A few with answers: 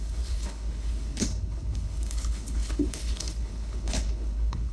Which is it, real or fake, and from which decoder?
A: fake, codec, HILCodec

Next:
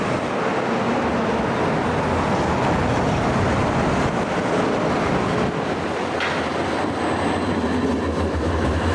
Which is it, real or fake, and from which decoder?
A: real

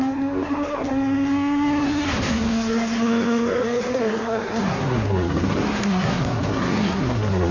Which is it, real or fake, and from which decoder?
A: fake, codec, SNAC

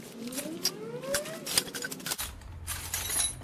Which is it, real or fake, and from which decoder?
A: real